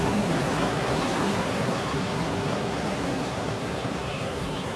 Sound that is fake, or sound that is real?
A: fake